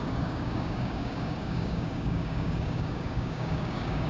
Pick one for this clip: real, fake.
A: fake